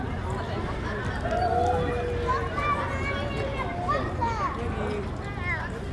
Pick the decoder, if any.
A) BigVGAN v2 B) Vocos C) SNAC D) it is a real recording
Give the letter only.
D